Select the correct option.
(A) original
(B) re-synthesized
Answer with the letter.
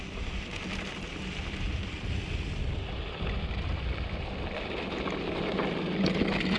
A